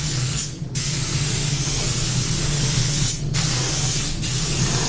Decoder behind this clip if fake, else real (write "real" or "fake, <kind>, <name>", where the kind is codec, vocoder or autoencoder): fake, codec, SNAC